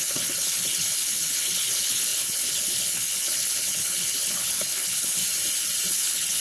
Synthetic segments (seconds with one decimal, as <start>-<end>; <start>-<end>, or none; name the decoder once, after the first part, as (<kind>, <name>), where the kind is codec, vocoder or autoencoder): 0.0-5.2 (codec, HILCodec); 5.9-6.4